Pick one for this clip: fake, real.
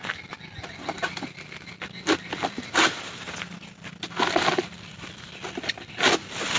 real